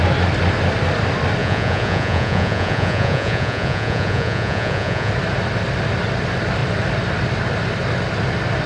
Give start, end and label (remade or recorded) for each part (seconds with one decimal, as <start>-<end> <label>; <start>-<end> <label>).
0.0-1.4 recorded; 1.4-5.1 remade; 5.1-8.7 recorded